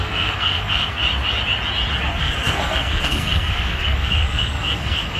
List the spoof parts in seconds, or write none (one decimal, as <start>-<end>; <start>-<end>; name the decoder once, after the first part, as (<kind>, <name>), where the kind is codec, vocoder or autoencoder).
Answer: 0.0-1.0 (codec, SNAC); 2.2-5.2

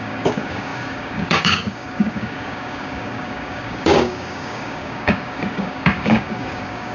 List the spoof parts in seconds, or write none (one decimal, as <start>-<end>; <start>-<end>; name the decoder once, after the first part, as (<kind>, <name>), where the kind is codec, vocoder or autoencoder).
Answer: 0.0-6.9 (codec, DAC)

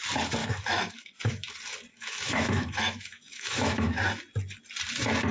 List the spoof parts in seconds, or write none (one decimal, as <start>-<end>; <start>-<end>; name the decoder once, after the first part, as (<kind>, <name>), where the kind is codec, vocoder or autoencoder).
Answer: 0.4-1.5 (autoencoder, DAC-VAE); 1.9-4.0

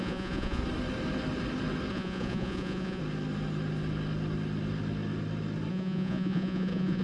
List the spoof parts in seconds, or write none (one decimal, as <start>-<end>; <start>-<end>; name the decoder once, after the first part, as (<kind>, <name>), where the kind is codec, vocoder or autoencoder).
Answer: 0.0-0.6 (vocoder, Vocos); 1.9-3.0; 5.7-7.0